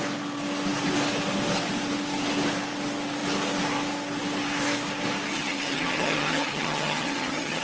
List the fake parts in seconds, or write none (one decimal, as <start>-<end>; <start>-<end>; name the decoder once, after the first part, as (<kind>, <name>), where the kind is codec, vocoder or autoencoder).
5.3-7.6 (vocoder, HiFi-GAN)